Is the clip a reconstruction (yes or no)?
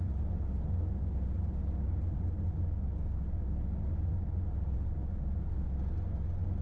no